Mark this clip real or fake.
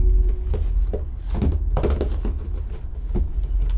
real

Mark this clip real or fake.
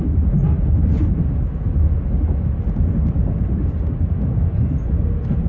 real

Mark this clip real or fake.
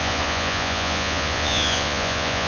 fake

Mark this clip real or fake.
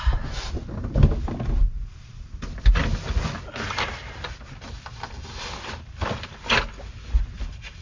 real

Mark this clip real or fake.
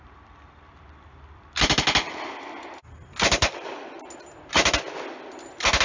real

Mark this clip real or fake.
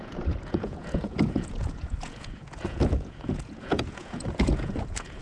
fake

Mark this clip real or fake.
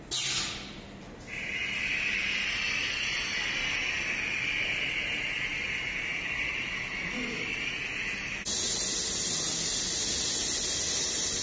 real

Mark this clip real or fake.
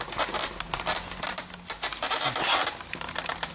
real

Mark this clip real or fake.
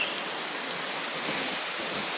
real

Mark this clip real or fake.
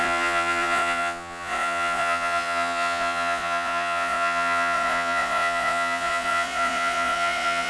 fake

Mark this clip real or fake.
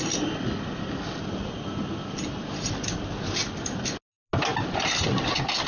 real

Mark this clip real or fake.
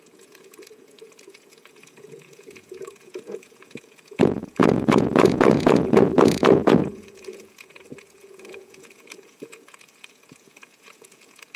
fake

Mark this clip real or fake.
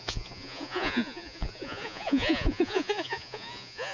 fake